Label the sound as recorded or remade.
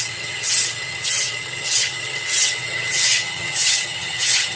remade